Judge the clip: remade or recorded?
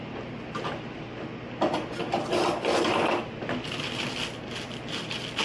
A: recorded